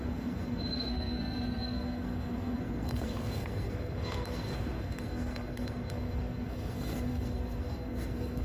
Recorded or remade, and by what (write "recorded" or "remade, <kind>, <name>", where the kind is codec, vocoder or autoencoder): remade, codec, SNAC